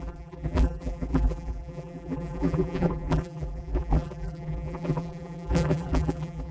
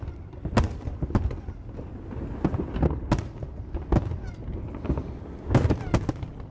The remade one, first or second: first